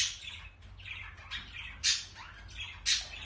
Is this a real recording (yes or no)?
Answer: yes